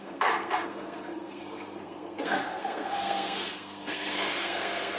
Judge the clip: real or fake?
fake